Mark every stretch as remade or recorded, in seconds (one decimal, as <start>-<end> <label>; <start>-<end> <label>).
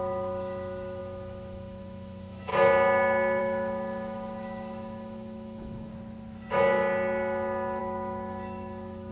0.0-2.5 remade; 2.5-3.4 recorded; 3.4-5.9 remade; 5.9-7.8 recorded; 7.8-9.1 remade